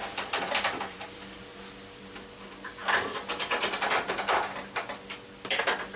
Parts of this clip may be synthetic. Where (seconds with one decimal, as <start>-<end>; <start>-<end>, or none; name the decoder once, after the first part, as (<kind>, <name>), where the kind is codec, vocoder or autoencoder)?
0.0-1.4 (vocoder, BigVGAN v2)